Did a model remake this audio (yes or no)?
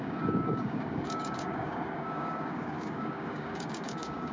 yes